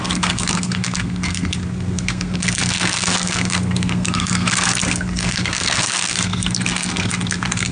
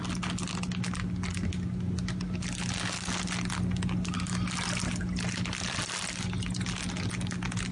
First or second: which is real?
second